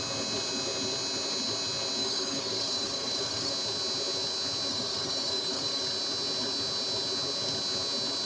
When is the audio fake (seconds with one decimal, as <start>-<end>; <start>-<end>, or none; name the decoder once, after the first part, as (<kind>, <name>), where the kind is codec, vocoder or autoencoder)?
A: 2.0-3.5 (codec, DAC); 4.7-5.8